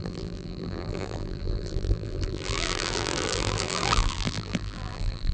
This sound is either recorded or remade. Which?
remade